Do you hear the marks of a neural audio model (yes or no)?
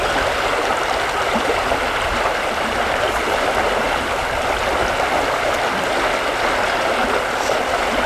no